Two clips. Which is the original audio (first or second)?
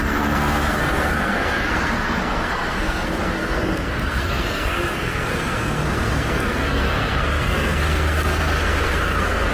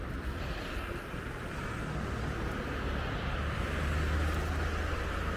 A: second